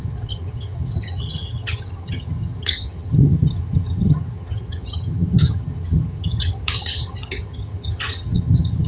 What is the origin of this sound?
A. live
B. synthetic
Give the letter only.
B